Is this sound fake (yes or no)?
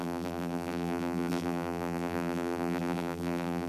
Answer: yes